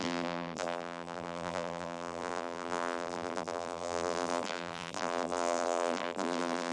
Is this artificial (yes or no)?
yes